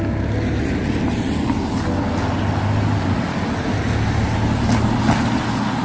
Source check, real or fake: real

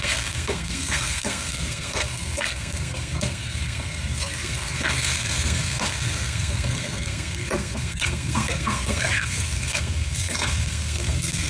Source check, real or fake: fake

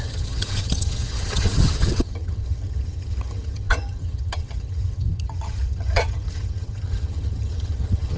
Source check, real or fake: fake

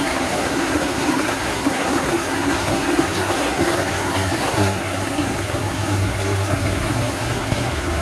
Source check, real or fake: fake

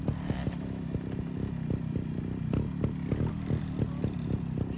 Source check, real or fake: real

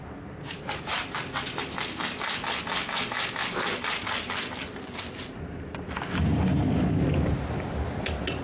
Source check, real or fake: real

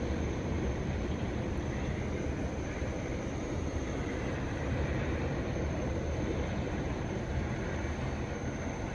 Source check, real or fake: fake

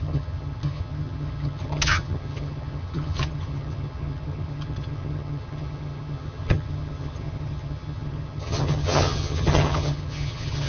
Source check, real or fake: fake